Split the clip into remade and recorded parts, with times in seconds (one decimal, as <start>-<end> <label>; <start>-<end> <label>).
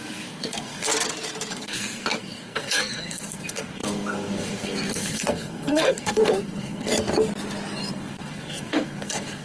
0.0-0.9 remade; 0.9-1.5 recorded; 1.5-6.9 remade; 6.9-7.9 recorded; 7.9-9.4 remade